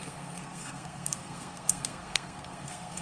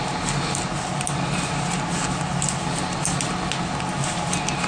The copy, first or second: first